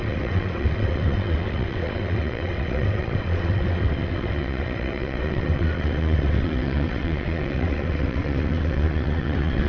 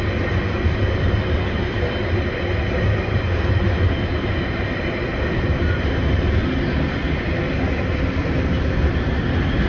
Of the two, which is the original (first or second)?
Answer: second